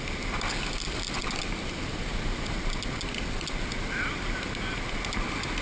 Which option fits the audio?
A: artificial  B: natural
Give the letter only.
B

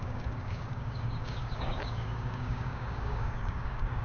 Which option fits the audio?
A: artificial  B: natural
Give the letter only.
A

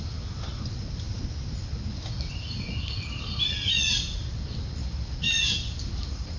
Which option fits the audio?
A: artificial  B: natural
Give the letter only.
B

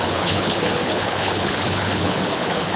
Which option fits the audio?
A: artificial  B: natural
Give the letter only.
A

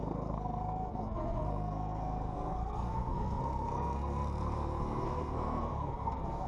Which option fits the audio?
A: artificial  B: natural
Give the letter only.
A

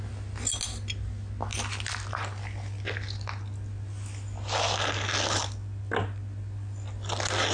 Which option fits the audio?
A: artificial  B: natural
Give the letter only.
B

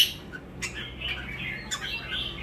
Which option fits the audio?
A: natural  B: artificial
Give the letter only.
A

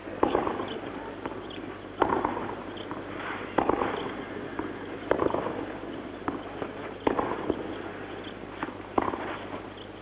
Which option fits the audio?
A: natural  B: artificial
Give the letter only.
A